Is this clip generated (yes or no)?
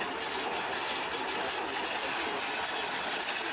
no